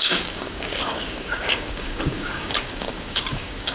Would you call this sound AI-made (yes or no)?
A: yes